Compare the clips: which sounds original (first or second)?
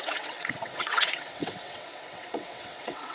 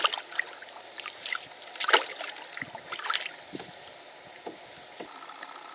second